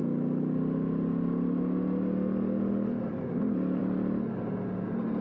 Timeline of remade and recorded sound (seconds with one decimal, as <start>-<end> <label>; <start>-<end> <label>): 0.0-5.2 recorded